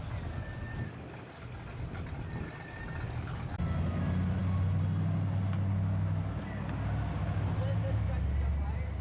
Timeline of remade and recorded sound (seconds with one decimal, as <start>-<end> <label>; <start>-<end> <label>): 0.0-9.0 recorded